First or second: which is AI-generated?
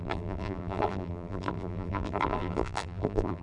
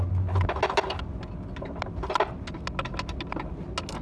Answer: first